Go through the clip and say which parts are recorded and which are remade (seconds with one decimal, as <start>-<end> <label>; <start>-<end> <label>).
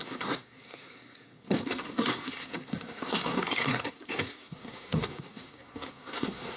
0.0-6.6 remade